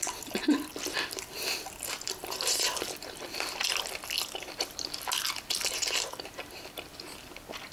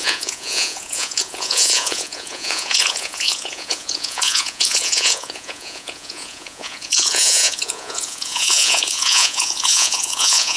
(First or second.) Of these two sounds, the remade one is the second